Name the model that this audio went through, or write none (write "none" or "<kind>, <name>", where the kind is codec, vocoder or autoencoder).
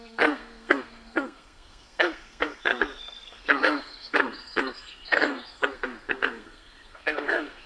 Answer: codec, SNAC